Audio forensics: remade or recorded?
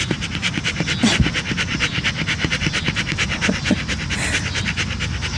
recorded